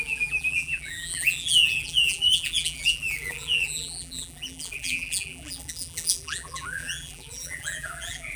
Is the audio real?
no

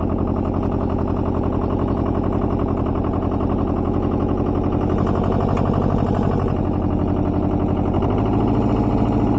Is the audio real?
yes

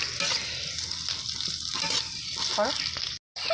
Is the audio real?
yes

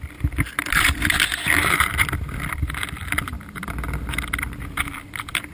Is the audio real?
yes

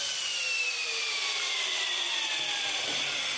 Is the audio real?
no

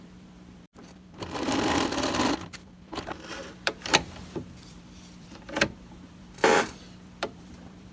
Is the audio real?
no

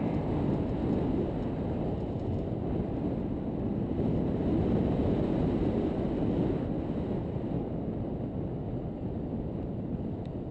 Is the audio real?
yes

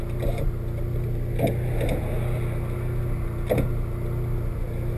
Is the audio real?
yes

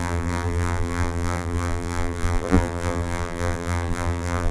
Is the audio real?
no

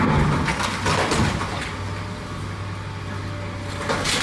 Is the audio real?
yes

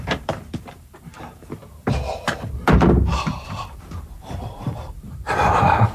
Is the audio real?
no